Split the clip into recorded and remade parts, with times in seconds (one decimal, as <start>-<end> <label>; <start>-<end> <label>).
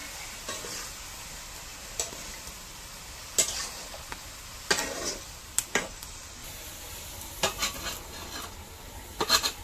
0.0-9.6 recorded